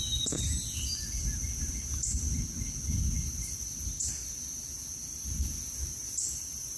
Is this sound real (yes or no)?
yes